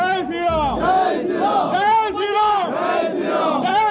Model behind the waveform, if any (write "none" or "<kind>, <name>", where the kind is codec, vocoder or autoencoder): none